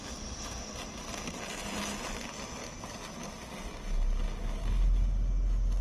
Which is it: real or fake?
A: real